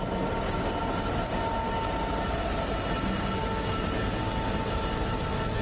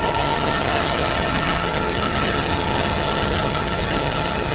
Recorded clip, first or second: first